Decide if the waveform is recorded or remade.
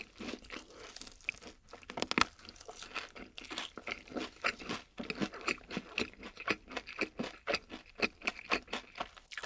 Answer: recorded